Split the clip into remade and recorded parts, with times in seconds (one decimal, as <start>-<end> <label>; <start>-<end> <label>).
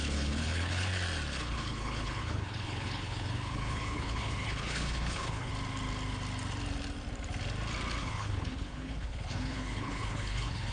0.0-0.9 remade; 0.9-1.4 recorded; 1.4-5.5 remade; 5.5-8.0 recorded; 8.0-10.7 remade